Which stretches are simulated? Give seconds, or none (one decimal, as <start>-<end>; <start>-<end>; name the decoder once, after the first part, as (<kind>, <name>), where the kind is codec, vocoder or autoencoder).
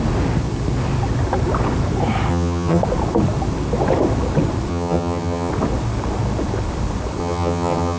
2.3-2.8 (vocoder, HiFi-GAN); 4.7-5.5; 7.2-8.0